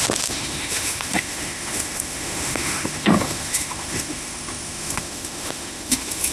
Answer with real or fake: fake